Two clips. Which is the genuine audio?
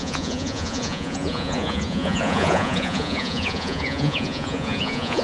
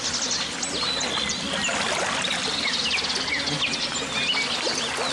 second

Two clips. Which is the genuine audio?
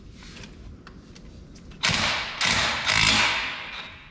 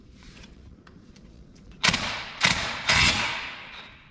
first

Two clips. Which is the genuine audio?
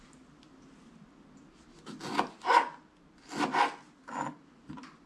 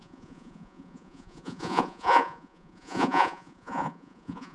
first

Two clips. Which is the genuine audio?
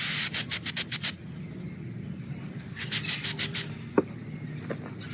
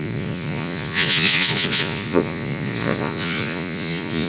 first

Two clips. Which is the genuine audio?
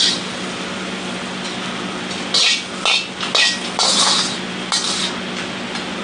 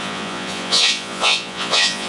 first